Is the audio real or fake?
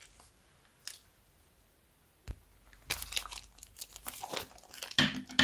real